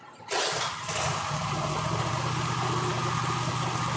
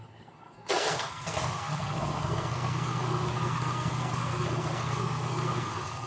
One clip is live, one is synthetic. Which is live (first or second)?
first